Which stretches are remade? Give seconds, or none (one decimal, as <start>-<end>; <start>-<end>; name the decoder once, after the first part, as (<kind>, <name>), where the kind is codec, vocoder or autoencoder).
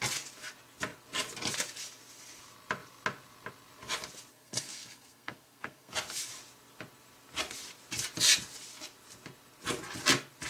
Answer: 4.3-5.9 (codec, SNAC)